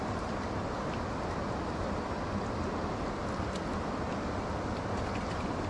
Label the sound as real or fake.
real